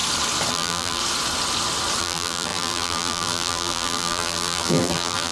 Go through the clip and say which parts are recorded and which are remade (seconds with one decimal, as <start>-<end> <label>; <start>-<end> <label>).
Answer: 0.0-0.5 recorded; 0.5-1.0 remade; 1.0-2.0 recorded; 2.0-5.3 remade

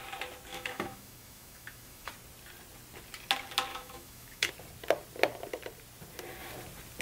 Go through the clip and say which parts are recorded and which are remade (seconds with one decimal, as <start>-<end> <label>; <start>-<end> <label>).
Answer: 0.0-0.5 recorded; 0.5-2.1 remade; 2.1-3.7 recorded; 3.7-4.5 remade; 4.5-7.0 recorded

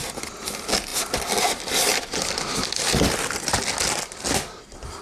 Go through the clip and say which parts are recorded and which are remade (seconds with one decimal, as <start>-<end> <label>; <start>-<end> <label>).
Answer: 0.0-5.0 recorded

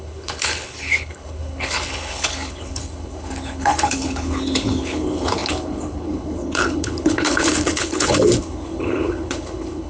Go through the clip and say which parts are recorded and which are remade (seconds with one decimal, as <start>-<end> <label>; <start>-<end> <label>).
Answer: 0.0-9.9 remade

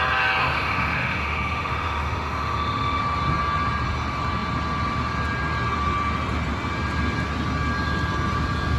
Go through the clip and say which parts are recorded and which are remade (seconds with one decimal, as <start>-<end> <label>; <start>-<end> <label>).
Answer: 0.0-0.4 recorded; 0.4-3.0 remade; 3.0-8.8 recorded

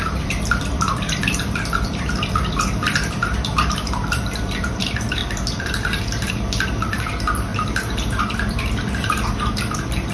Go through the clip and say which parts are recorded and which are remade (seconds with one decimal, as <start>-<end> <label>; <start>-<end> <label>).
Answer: 0.0-10.1 remade

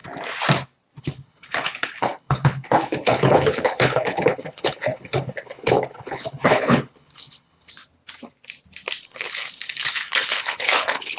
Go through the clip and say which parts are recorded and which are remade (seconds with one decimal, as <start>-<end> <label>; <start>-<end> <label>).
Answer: 0.0-1.0 recorded; 1.0-7.8 remade; 7.8-9.0 recorded; 9.0-11.2 remade

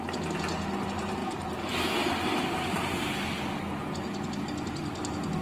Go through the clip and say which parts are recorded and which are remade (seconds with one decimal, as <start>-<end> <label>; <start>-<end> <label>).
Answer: 0.0-5.4 recorded